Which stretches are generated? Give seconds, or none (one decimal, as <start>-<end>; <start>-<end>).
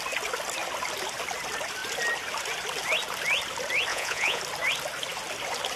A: 3.9-4.4